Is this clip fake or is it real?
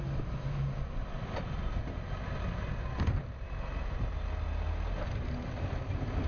real